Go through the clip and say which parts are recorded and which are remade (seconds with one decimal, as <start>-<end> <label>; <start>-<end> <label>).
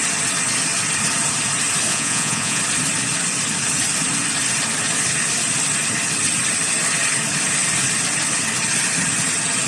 0.0-1.9 recorded; 1.9-2.6 remade; 2.6-9.7 recorded